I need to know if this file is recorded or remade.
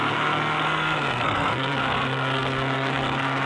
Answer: remade